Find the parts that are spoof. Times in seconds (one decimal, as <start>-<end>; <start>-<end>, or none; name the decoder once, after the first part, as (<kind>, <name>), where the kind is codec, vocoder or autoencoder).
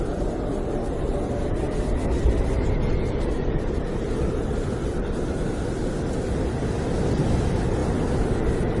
none